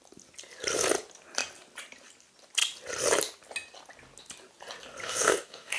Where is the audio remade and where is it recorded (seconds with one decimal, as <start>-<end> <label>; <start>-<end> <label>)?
0.0-5.0 recorded; 5.0-5.8 remade